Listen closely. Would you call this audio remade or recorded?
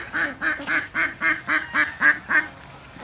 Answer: recorded